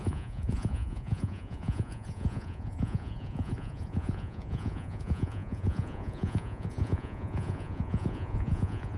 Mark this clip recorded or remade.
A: remade